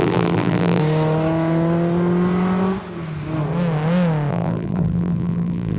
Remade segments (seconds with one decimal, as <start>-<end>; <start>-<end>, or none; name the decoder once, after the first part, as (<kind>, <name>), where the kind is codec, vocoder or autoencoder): 0.0-0.8 (vocoder, BigVGAN v2); 4.3-5.8